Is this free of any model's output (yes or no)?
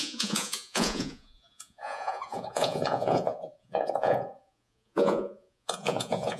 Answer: no